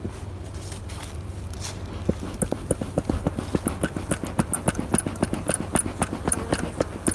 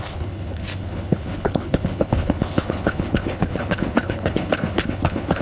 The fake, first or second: second